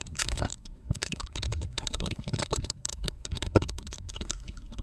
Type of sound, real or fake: fake